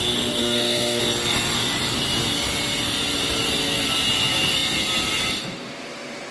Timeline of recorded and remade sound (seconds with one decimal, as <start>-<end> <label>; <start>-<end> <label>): 0.0-0.4 recorded; 0.4-1.0 remade; 1.0-6.3 recorded